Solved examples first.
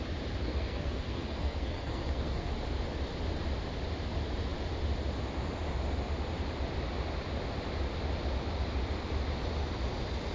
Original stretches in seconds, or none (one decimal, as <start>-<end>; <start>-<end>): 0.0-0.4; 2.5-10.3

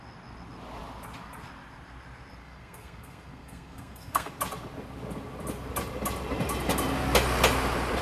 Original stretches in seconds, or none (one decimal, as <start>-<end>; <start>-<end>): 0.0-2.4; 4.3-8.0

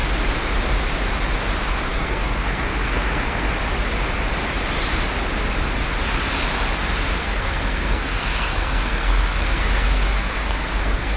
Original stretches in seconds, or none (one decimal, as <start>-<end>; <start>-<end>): 0.0-1.9; 3.5-7.2

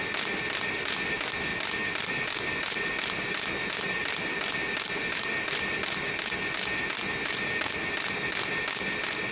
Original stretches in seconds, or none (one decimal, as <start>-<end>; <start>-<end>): 0.0-9.3

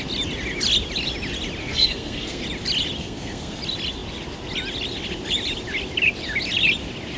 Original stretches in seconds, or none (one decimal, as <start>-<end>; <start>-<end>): 0.0-1.6; 2.4-3.0; 3.6-7.2